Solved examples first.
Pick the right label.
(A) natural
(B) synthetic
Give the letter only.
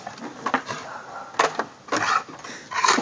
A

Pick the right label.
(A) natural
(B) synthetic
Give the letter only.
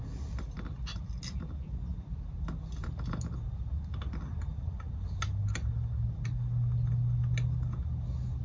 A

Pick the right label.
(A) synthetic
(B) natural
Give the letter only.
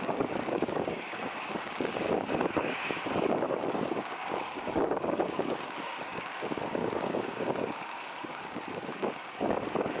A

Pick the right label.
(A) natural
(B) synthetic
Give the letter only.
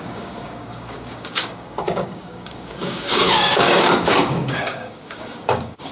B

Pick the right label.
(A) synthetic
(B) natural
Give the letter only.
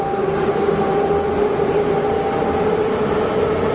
B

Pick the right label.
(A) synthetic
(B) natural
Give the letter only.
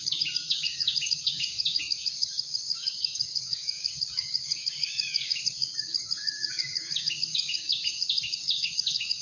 A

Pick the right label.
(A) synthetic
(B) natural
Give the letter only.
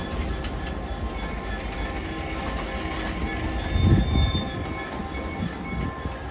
B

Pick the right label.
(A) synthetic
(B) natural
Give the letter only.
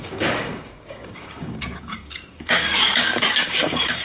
A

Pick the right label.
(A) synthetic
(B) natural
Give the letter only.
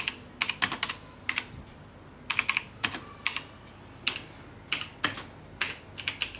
B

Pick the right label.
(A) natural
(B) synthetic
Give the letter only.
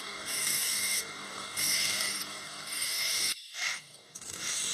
B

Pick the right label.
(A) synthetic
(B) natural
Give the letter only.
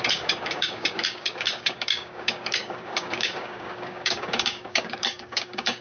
A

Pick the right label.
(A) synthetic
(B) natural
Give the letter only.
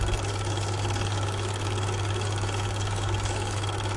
A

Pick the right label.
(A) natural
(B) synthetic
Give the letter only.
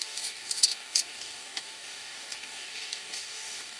B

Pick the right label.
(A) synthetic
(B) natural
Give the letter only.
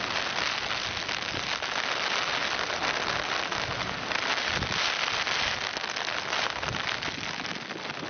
B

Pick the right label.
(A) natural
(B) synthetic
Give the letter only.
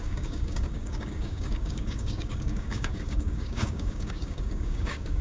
B